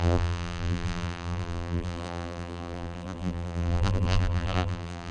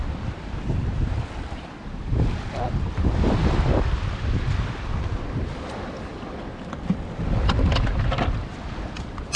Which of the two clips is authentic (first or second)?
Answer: second